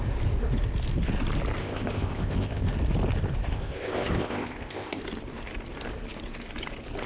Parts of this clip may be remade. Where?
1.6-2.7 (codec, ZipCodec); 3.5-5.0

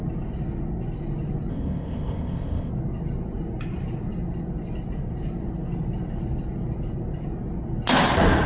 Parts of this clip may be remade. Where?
1.5-2.7 (codec, ZipCodec)